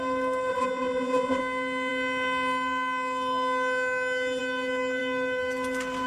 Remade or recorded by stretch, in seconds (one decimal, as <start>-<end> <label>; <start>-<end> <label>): 0.0-0.5 recorded; 0.5-1.4 remade; 1.4-6.1 recorded